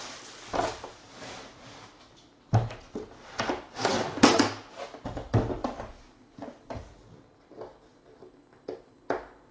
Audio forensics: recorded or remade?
recorded